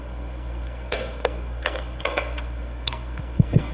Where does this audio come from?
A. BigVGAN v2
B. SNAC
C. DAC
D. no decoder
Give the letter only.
B